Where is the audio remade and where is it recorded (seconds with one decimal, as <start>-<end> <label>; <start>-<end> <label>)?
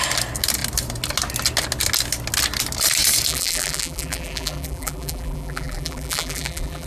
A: 0.0-3.3 recorded; 3.3-6.9 remade